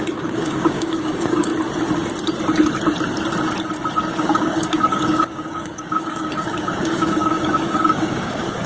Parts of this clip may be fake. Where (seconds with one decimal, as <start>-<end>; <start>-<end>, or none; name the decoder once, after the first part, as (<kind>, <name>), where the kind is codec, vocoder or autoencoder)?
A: 0.0-1.5 (codec, DAC); 4.1-8.7